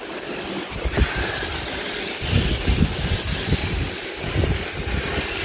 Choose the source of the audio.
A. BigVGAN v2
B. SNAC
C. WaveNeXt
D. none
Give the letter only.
D